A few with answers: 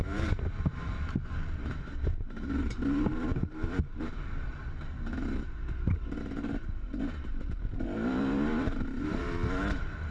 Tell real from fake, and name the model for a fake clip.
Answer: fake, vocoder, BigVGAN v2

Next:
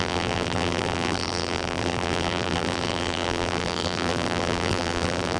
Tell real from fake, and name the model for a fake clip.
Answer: fake, vocoder, BigVGAN v2